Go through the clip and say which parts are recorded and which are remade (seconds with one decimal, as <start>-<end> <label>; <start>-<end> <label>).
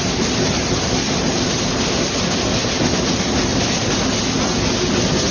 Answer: 0.0-5.3 recorded